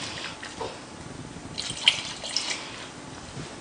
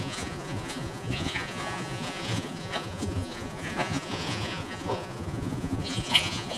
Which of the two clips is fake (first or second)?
second